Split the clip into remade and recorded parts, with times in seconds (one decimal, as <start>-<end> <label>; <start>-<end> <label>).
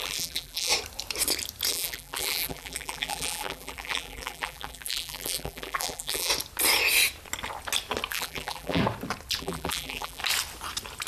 0.0-0.7 remade; 0.7-1.7 recorded; 1.7-6.3 remade; 6.3-8.1 recorded; 8.1-8.8 remade; 8.8-9.4 recorded; 9.4-10.2 remade; 10.2-11.1 recorded